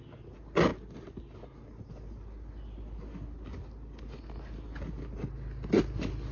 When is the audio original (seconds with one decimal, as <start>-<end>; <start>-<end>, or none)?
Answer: 0.0-6.3